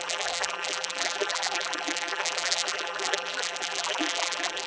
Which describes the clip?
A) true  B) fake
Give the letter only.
B